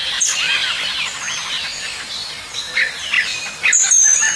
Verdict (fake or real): real